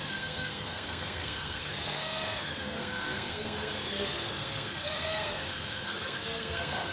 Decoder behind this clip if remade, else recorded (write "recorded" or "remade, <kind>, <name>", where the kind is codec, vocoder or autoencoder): remade, codec, SNAC